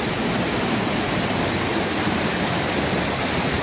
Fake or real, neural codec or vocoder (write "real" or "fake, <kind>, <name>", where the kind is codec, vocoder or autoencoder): fake, vocoder, BigVGAN v2